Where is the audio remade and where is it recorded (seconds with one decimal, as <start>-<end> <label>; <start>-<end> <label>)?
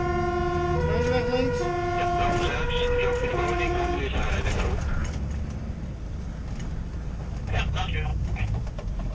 0.0-3.2 recorded; 3.2-4.0 remade; 4.0-8.1 recorded; 8.1-9.1 remade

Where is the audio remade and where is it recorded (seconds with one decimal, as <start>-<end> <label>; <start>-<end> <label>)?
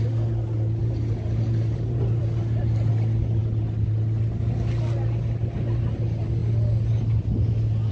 0.0-0.8 recorded; 0.8-2.2 remade; 2.2-7.9 recorded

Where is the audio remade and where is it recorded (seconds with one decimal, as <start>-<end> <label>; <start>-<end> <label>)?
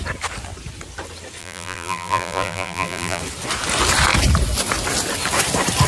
0.0-1.4 recorded; 1.4-3.2 remade; 3.2-5.9 recorded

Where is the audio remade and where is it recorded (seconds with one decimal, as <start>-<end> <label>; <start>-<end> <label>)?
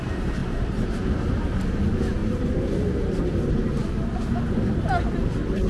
0.0-0.4 recorded; 0.4-1.6 remade; 1.6-2.2 recorded; 2.2-3.2 remade; 3.2-5.7 recorded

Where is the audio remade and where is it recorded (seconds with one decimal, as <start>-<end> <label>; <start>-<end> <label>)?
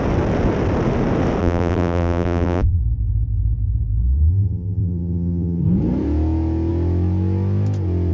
0.0-1.4 recorded; 1.4-2.8 remade; 2.8-4.3 recorded; 4.3-5.6 remade; 5.6-8.1 recorded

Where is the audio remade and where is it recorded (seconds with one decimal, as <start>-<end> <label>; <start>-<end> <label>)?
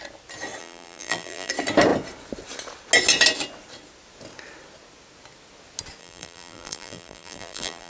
0.0-0.6 recorded; 0.6-1.5 remade; 1.5-6.0 recorded; 6.0-7.9 remade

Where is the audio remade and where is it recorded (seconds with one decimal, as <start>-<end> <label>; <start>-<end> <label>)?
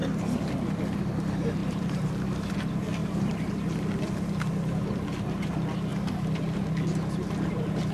0.0-1.6 recorded; 1.6-2.1 remade; 2.1-3.0 recorded; 3.0-3.5 remade; 3.5-7.9 recorded